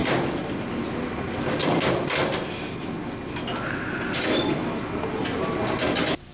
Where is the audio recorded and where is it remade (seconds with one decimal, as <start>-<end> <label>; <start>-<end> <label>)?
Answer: 0.0-6.3 recorded